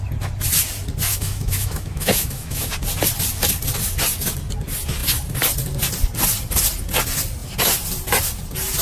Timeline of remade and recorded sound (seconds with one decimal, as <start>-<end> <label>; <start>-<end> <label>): 0.0-1.1 recorded; 1.1-2.7 remade; 2.7-8.8 recorded

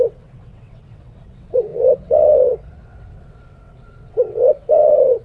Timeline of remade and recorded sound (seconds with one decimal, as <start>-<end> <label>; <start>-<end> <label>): 0.0-5.2 remade

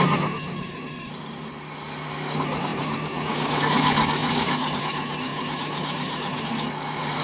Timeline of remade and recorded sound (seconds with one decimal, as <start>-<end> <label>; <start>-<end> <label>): 0.0-1.1 remade; 1.1-1.7 recorded; 1.7-7.2 remade